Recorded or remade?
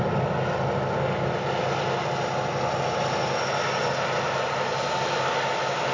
recorded